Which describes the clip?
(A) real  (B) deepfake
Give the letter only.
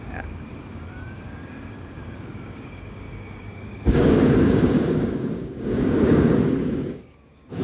B